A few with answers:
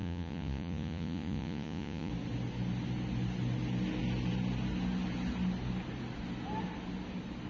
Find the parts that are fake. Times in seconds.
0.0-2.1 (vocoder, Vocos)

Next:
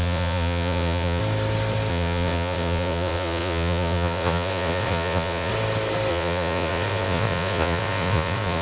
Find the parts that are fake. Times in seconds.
0.0-1.2 (vocoder, Vocos); 1.9-5.5; 6.1-8.6

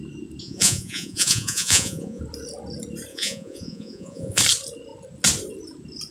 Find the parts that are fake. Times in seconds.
0.4-2.2 (vocoder, Vocos); 3.1-4.4

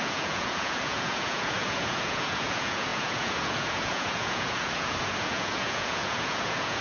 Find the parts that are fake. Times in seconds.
0.0-6.8 (vocoder, Vocos)

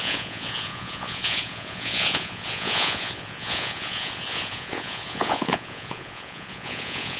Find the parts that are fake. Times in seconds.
0.0-7.2 (vocoder, Vocos)